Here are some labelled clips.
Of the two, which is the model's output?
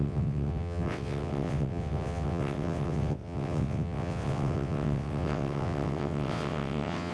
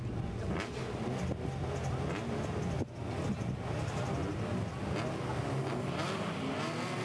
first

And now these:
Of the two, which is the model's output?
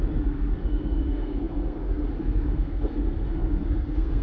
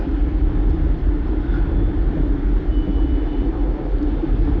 first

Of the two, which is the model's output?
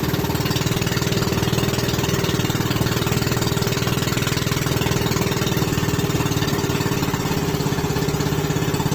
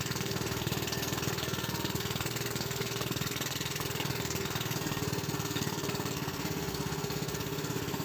second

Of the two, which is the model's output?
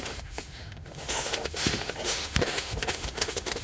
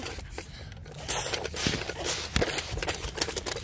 first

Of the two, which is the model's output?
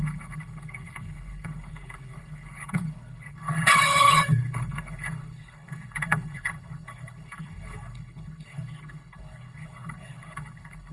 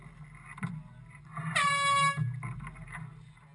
first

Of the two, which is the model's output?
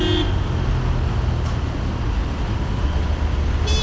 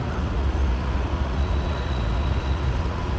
second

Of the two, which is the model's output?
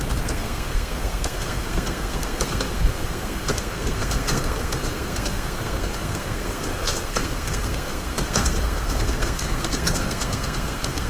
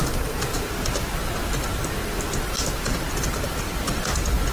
first